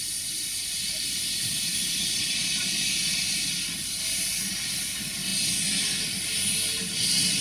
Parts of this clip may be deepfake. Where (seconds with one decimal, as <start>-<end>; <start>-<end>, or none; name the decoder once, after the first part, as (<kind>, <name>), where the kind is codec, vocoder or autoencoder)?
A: none